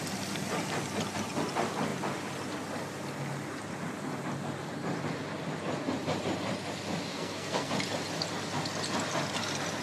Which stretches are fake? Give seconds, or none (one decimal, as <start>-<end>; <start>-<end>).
7.1-7.7